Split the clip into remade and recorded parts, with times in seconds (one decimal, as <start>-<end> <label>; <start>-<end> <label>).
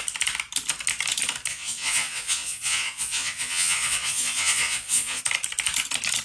0.0-1.5 recorded; 1.5-5.2 remade; 5.2-6.2 recorded